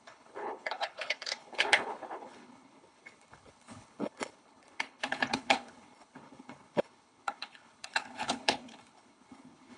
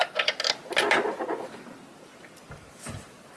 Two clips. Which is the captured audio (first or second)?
second